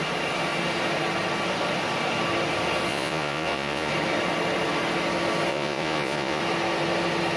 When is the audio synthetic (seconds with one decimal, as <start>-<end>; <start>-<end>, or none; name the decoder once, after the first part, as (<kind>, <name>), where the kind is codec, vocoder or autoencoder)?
2.9-3.9 (vocoder, Vocos); 5.5-6.4